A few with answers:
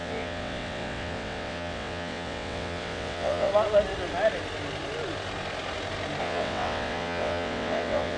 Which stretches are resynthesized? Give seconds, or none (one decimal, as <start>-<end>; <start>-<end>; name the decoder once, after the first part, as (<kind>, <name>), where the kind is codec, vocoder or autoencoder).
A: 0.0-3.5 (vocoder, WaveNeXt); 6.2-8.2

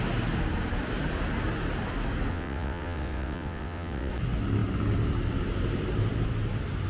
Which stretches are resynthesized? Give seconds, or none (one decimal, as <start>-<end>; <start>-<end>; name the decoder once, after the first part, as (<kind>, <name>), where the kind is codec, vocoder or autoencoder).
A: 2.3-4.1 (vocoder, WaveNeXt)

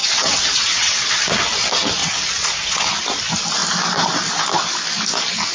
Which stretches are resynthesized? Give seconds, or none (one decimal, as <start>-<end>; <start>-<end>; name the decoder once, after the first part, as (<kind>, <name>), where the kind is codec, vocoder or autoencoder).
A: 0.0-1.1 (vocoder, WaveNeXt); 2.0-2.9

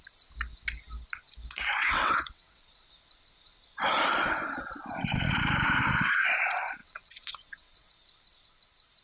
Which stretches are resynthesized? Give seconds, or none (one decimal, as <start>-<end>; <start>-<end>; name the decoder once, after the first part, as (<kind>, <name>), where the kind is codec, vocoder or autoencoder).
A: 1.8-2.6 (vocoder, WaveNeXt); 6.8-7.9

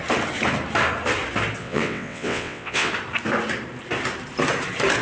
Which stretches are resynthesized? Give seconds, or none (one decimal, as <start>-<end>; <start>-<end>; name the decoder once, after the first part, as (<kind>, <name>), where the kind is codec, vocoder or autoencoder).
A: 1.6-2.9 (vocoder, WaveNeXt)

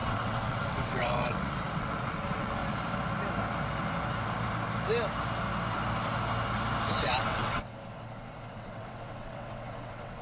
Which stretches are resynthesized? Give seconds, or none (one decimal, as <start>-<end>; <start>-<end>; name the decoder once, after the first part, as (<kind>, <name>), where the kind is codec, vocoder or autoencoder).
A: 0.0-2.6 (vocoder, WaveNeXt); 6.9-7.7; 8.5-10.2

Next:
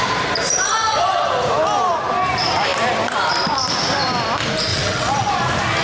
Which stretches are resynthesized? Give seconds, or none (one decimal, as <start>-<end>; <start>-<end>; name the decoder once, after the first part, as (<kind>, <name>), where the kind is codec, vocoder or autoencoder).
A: 4.7-5.3 (vocoder, WaveNeXt)

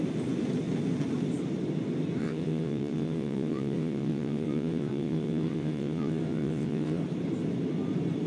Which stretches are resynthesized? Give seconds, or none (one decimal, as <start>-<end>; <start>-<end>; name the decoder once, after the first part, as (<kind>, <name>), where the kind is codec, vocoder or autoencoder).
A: 2.2-7.0 (vocoder, WaveNeXt)